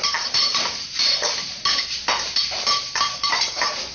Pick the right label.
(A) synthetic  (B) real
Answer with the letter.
A